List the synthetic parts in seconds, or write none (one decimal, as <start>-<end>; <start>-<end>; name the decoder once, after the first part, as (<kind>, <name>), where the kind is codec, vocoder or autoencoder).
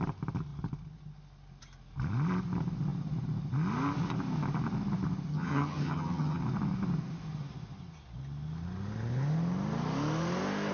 5.3-6.4 (vocoder, HiFi-GAN)